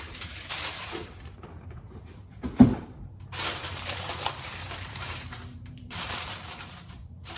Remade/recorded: remade